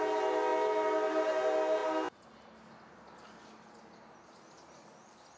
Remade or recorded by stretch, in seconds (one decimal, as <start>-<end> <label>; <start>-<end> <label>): 0.0-5.4 recorded